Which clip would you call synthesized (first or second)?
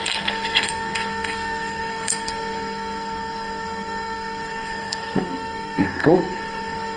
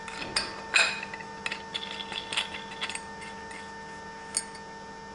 first